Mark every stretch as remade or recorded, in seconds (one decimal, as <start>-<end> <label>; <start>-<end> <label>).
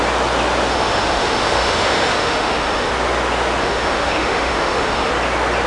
0.0-0.7 recorded; 0.7-2.9 remade; 2.9-3.6 recorded; 3.6-5.1 remade; 5.1-5.7 recorded